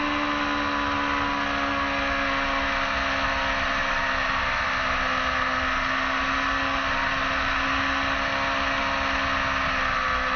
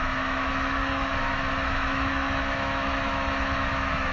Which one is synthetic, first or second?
second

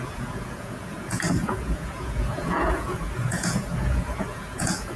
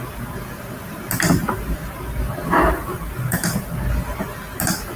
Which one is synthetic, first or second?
first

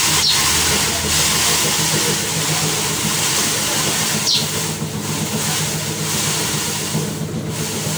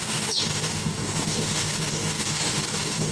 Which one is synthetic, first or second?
second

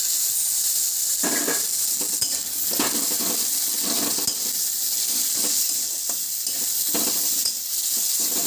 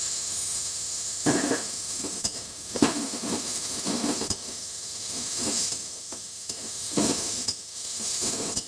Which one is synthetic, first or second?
second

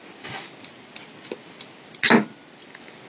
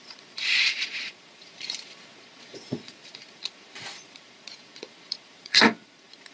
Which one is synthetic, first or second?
second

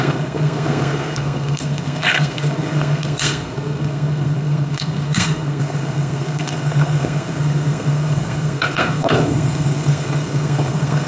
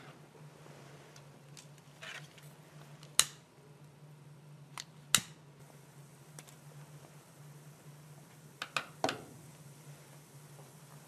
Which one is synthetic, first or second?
first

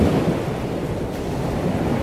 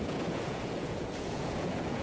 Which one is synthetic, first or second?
second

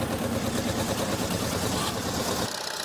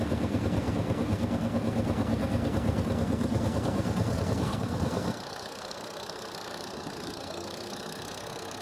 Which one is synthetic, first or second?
second